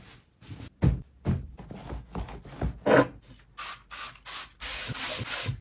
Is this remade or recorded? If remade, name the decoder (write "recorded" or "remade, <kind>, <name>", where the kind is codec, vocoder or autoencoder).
recorded